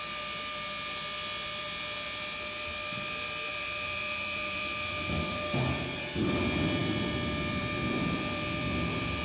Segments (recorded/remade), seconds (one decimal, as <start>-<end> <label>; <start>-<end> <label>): 0.0-3.5 recorded; 3.5-6.2 remade; 6.2-6.8 recorded; 6.8-9.2 remade